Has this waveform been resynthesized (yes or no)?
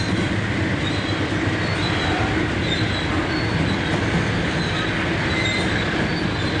no